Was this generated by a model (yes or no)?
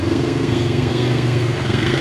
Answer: yes